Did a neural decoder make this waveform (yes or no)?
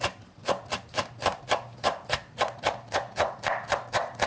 no